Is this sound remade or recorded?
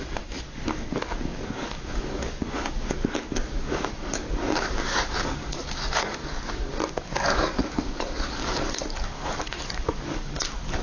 remade